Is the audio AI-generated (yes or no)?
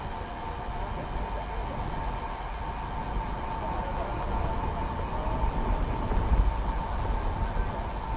no